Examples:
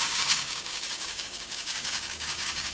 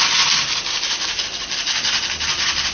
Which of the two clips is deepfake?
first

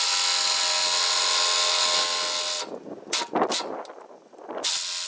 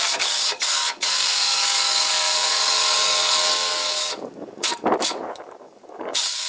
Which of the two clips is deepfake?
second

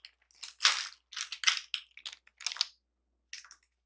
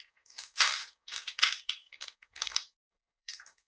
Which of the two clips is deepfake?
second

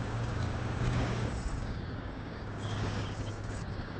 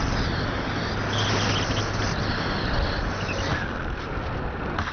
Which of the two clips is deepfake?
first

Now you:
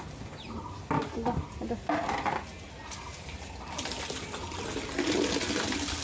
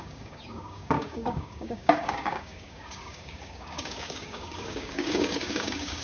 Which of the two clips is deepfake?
second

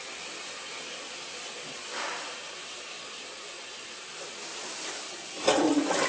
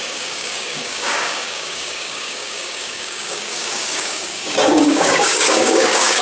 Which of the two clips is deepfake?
second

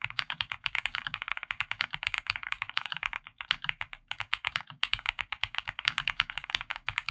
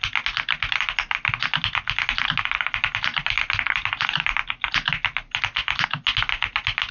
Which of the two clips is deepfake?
first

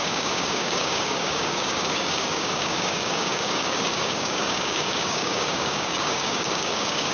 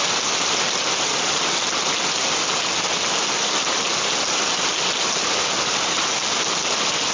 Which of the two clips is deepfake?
first